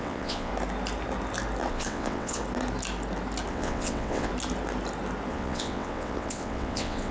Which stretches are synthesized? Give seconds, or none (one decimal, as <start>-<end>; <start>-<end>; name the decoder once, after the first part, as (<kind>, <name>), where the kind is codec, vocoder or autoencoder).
0.0-0.5 (vocoder, WaveNeXt); 1.7-2.4; 3.5-4.3; 5.3-7.1